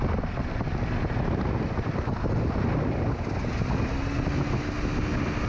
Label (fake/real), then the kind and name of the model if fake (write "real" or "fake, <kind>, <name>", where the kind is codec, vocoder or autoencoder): real